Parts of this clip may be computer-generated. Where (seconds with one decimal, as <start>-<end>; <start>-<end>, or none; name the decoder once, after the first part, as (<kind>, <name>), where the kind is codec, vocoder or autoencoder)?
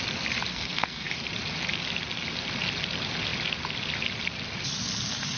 0.5-1.1 (codec, SNAC)